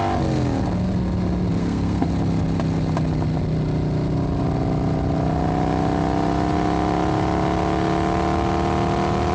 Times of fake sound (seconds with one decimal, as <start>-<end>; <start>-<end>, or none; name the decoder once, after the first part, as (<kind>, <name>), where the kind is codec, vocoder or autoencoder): 1.6-2.1 (codec, SNAC)